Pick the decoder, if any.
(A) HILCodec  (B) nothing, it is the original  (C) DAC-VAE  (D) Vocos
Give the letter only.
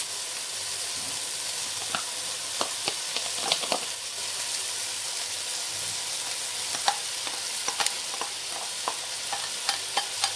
B